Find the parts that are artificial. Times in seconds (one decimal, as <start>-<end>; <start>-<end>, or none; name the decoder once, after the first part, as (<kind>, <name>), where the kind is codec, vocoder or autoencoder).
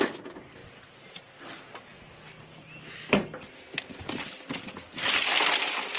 none